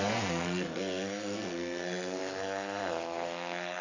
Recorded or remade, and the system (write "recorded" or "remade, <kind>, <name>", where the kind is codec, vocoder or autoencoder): remade, codec, SNAC